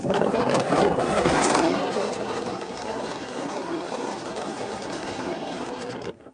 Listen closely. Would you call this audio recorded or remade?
remade